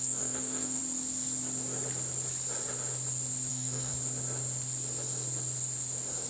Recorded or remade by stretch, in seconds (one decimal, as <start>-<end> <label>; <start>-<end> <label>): 0.0-0.8 remade; 0.8-3.5 recorded; 3.5-3.9 remade; 3.9-6.3 recorded